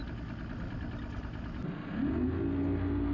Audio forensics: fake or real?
real